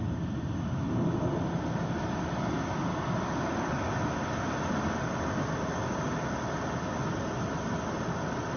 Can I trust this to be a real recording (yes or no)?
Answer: yes